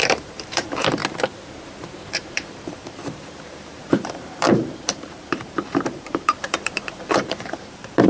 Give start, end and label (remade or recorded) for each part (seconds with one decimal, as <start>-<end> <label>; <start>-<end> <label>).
0.0-1.0 remade; 1.0-2.1 recorded; 2.1-8.1 remade